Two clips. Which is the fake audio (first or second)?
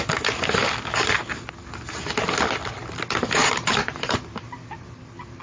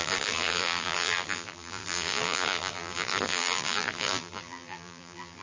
second